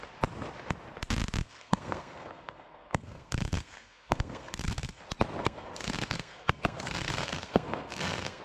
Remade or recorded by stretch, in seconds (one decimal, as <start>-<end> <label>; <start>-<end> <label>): 0.0-1.4 recorded; 1.4-5.0 remade; 5.0-5.4 recorded; 5.4-8.4 remade